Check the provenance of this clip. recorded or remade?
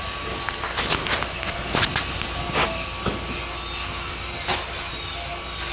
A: recorded